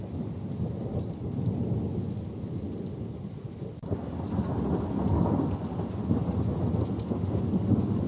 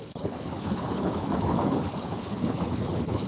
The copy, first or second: second